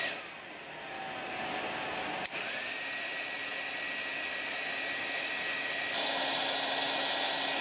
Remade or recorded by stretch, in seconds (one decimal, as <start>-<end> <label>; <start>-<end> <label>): 0.0-7.6 recorded